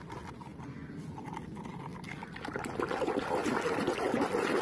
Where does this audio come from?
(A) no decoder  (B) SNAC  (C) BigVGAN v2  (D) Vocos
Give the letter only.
A